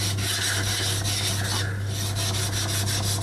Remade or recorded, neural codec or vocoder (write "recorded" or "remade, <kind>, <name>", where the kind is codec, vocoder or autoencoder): recorded